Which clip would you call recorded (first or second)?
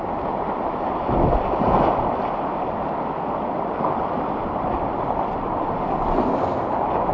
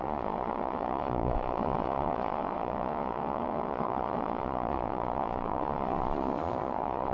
first